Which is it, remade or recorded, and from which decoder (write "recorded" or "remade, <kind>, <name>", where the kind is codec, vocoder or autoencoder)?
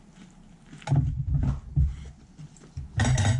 recorded